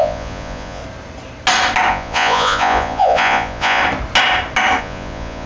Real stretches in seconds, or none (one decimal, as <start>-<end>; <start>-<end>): 0.8-1.9; 3.8-4.8